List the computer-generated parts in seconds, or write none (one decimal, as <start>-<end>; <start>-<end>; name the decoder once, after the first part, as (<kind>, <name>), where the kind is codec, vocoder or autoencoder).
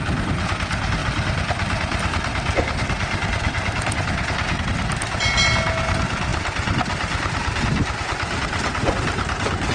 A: none